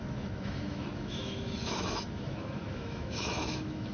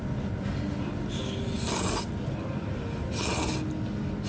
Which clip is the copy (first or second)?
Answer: first